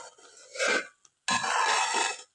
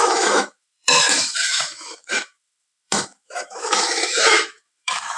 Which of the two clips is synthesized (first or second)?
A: second